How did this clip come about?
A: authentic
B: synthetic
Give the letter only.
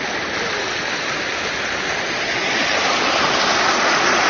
A